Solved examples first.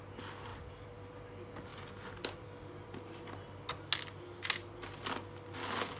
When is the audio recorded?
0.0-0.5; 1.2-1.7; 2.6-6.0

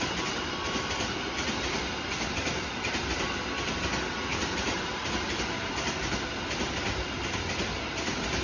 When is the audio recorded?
0.0-4.3; 5.1-8.4

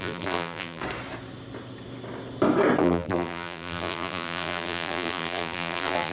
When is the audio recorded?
0.8-2.8

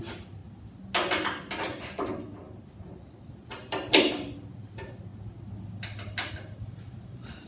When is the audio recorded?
0.4-3.3; 5.1-6.3

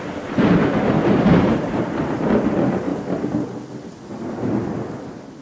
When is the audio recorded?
0.0-1.3; 2.2-5.4